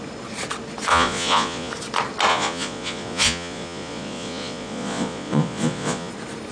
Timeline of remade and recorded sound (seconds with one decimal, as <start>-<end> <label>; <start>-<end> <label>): 0.0-0.9 recorded; 0.9-1.7 remade; 1.7-2.3 recorded; 2.3-6.1 remade; 6.1-6.5 recorded